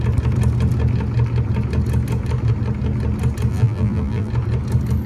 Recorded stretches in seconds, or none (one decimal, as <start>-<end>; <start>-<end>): 0.0-3.5; 4.3-5.1